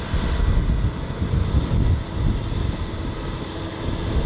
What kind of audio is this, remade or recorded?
recorded